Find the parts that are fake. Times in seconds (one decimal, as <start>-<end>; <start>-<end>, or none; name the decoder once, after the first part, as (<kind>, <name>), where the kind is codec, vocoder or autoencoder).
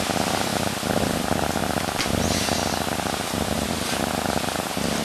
none